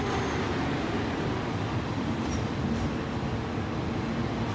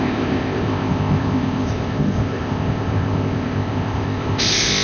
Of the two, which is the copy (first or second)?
second